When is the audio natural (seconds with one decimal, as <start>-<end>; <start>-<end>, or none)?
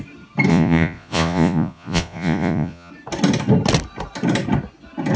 0.0-0.5; 2.9-5.2